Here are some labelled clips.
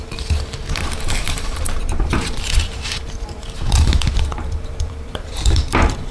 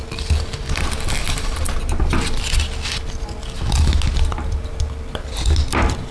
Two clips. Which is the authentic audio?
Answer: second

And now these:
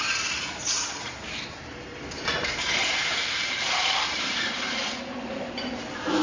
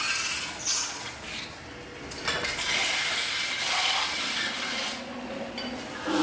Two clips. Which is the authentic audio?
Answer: second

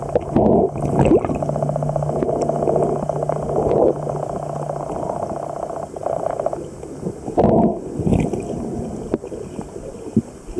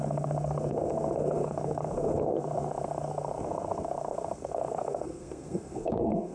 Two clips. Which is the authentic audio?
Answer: first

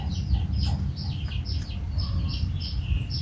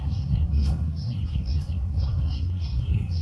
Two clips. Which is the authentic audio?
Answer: first